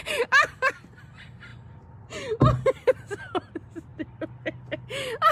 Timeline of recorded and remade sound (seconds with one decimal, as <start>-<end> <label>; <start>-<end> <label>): 0.0-5.3 recorded